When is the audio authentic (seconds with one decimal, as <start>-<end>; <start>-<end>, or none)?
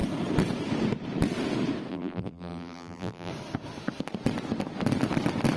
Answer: 0.0-1.9; 3.3-5.6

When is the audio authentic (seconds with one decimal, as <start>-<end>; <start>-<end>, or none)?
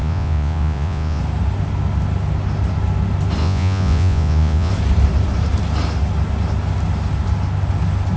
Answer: 1.2-3.4; 4.7-8.2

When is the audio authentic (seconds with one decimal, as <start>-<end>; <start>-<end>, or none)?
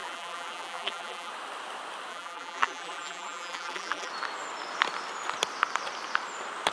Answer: 1.3-2.1; 4.1-6.7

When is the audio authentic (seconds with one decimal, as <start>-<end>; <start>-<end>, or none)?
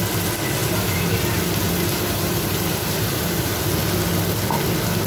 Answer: 0.0-0.6; 3.7-5.1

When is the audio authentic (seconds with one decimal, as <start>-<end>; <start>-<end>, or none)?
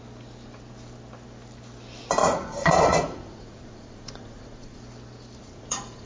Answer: 0.0-2.2; 4.8-5.4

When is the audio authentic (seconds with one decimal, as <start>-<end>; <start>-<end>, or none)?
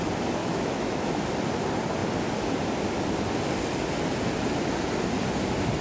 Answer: 0.0-0.4; 1.2-5.8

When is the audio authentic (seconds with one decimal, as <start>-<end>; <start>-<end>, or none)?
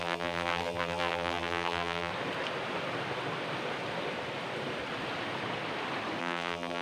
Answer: 2.1-6.2